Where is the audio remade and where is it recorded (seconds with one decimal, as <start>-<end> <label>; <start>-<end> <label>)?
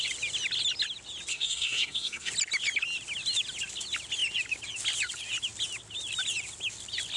0.0-1.3 recorded; 1.3-2.3 remade; 2.3-7.2 recorded